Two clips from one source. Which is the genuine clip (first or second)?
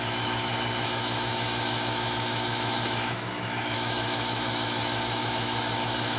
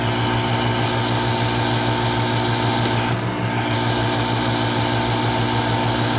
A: second